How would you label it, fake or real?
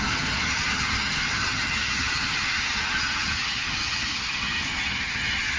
fake